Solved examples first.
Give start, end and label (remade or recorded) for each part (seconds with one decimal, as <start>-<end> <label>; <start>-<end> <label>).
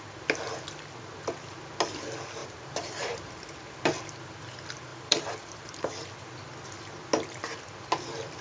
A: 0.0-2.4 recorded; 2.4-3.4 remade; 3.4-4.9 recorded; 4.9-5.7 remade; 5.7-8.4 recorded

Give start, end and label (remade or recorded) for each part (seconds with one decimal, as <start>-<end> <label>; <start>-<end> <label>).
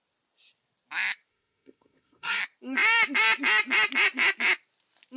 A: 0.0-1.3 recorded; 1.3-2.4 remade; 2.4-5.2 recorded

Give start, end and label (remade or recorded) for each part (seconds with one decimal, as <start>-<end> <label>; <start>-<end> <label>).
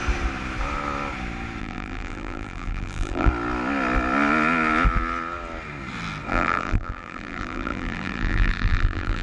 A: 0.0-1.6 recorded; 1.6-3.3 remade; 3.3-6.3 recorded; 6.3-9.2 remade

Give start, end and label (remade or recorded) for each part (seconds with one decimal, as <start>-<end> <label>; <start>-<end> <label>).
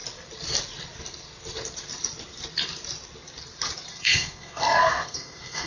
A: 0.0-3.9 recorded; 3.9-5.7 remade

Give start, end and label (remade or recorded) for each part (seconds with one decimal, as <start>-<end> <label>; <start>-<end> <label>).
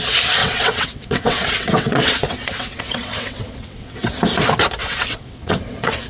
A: 0.0-0.4 recorded; 0.4-4.1 remade; 4.1-4.8 recorded; 4.8-6.1 remade